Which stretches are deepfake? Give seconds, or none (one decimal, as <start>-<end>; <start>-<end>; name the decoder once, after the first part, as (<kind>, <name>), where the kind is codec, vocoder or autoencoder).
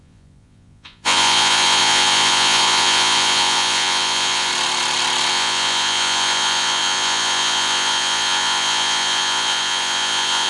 0.0-4.5 (vocoder, Vocos); 5.3-10.5